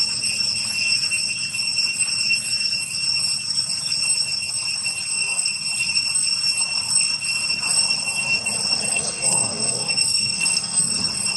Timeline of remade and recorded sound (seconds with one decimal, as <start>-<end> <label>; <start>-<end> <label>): 0.0-5.1 recorded; 5.1-5.6 remade; 5.6-8.9 recorded; 8.9-10.8 remade; 10.8-11.4 recorded